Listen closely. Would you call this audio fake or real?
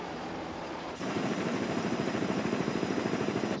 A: fake